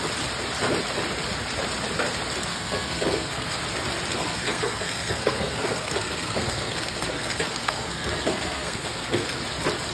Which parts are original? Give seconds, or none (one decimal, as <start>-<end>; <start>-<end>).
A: 0.0-2.5; 3.6-4.1; 9.4-9.9